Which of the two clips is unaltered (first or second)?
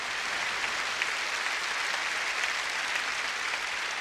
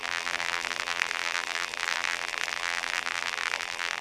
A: first